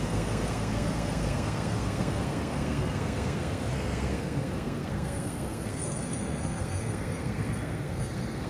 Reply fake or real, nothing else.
fake